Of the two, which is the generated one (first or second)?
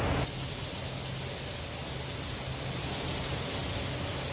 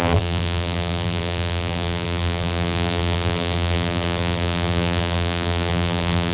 second